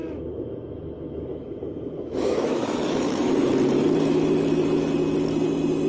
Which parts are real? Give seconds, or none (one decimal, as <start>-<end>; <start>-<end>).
3.5-5.9